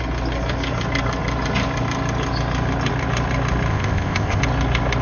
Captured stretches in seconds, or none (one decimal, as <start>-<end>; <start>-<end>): 0.0-3.7; 4.4-5.0